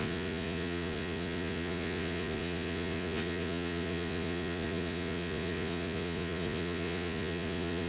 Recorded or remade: remade